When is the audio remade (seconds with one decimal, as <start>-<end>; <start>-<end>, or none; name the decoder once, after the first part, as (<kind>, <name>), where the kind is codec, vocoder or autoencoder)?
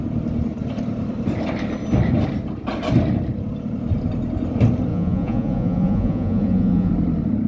4.9-6.9 (vocoder, Vocos)